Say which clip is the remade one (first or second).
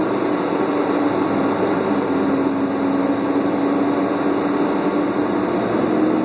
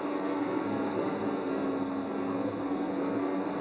second